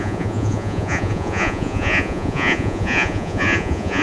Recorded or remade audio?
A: remade